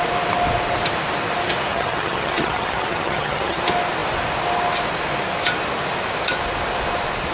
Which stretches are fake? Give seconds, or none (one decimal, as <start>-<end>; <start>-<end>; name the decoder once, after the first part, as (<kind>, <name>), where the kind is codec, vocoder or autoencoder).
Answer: 1.7-3.6 (vocoder, HiFi-GAN)